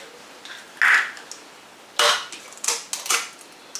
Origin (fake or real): real